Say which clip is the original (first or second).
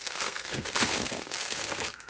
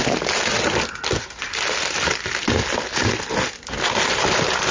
second